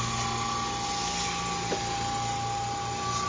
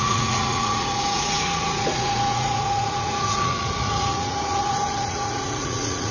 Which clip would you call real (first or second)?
first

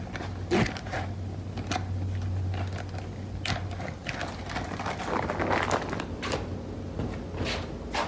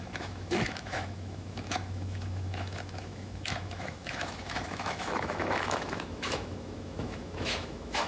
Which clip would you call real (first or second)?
first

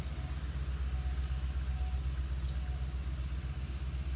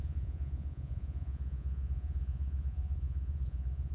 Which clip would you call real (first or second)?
first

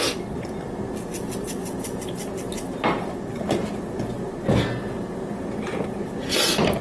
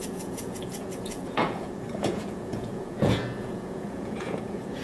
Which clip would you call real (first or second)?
first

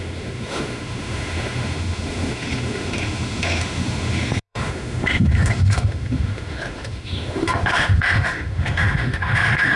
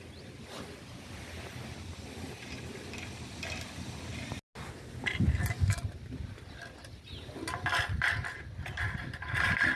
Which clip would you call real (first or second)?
second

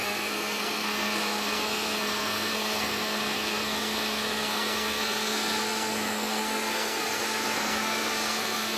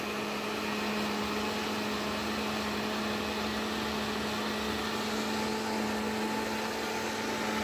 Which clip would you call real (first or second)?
second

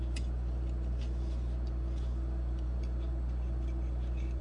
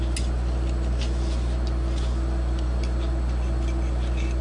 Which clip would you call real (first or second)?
second